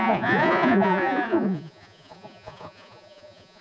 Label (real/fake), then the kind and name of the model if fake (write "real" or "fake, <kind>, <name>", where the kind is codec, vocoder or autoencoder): fake, vocoder, Vocos